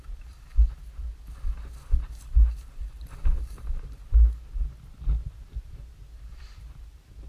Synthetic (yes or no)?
no